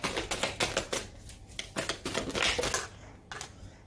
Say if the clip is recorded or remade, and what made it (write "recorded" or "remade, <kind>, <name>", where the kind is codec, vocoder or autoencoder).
recorded